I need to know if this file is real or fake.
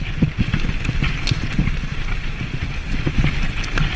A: real